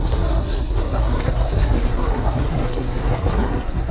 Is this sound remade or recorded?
remade